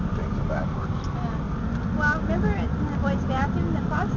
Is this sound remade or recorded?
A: recorded